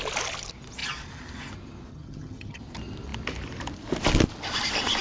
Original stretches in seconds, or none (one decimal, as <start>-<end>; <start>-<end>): 0.0-1.9; 2.6-5.0